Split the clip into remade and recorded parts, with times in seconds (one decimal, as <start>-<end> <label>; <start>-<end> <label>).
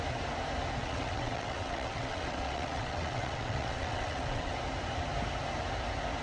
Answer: 0.0-0.8 recorded; 0.8-4.5 remade; 4.5-6.2 recorded